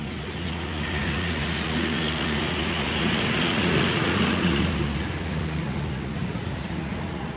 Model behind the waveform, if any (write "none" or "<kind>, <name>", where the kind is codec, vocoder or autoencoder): vocoder, Vocos